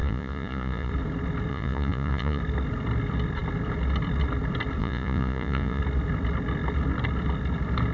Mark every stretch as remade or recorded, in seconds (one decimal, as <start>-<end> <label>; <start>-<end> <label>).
0.0-0.9 remade; 0.9-1.5 recorded; 1.5-2.4 remade; 2.4-4.8 recorded; 4.8-5.8 remade; 5.8-7.9 recorded

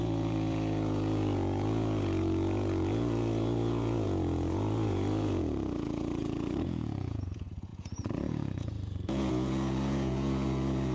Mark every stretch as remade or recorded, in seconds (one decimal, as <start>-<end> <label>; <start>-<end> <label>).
0.0-10.9 remade

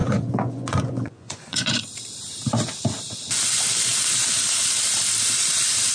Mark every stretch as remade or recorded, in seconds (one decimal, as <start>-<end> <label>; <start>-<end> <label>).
0.0-1.8 remade; 1.8-5.9 recorded

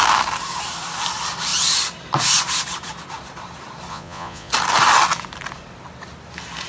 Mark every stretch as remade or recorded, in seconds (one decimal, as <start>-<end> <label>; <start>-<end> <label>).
0.0-3.9 recorded; 3.9-4.5 remade; 4.5-6.7 recorded

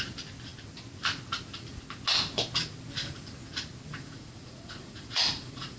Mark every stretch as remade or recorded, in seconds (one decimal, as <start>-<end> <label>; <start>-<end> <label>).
0.0-3.9 recorded; 3.9-5.8 remade